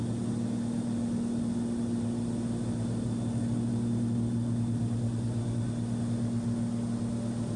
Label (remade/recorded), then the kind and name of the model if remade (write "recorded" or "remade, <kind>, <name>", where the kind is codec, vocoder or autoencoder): recorded